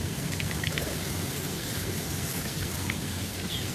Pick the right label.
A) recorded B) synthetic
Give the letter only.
B